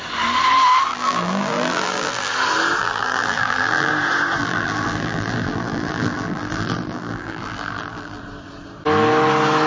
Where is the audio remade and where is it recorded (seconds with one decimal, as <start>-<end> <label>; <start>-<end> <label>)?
0.0-0.9 recorded; 0.9-2.3 remade; 2.3-2.8 recorded; 2.8-3.9 remade; 3.9-4.4 recorded; 4.4-8.2 remade; 8.2-9.7 recorded